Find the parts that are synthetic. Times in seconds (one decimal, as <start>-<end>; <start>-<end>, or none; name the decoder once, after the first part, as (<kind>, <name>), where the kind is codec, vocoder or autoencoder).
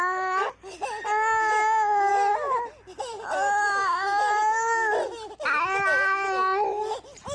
none